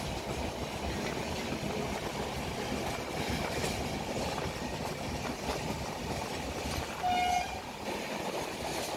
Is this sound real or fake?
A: real